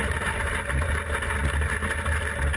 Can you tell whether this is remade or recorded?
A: recorded